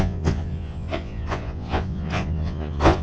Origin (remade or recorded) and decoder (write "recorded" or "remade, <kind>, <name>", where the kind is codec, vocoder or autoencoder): remade, vocoder, Vocos